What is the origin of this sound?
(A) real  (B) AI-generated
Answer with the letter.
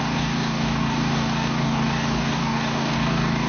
B